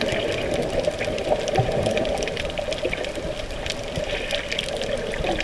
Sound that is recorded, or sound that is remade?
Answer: recorded